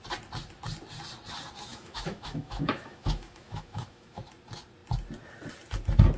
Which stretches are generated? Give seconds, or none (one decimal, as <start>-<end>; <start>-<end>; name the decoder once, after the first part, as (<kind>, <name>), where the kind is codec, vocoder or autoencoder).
1.7-4.2 (autoencoder, DAC-VAE)